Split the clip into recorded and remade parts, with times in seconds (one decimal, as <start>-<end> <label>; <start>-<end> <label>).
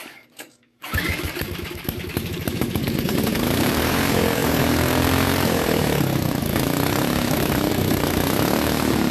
0.0-9.1 remade